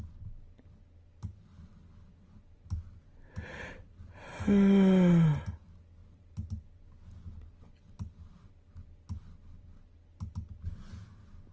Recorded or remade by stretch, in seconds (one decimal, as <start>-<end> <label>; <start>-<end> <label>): 0.0-11.5 recorded